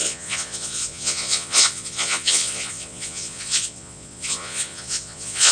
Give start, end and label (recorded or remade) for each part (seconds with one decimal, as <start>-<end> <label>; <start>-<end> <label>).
0.0-5.5 remade

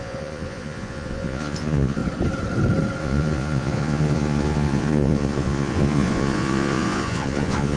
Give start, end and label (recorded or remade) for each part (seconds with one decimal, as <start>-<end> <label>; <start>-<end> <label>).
0.0-2.0 remade; 2.0-3.0 recorded; 3.0-7.8 remade

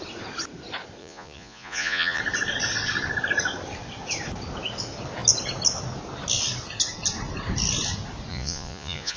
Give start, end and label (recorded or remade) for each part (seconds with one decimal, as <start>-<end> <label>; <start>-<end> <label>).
0.0-1.0 recorded; 1.0-2.2 remade; 2.2-8.3 recorded; 8.3-9.2 remade

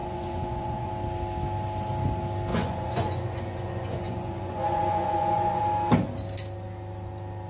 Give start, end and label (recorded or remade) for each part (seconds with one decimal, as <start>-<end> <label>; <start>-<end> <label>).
0.0-0.9 remade; 0.9-2.5 recorded; 2.5-5.6 remade; 5.6-7.5 recorded

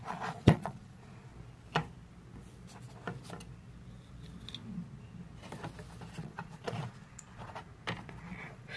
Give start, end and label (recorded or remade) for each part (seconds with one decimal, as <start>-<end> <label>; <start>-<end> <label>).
0.0-1.3 remade; 1.3-6.2 recorded; 6.2-7.6 remade; 7.6-8.2 recorded; 8.2-8.8 remade

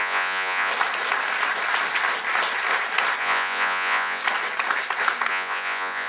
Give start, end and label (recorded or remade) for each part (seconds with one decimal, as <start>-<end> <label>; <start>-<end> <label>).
0.0-0.7 remade; 0.7-3.2 recorded; 3.2-4.2 remade; 4.2-5.3 recorded; 5.3-6.1 remade

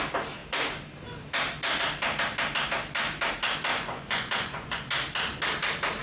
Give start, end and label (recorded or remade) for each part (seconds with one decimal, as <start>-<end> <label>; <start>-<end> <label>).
0.0-3.7 recorded; 3.7-4.9 remade; 4.9-6.0 recorded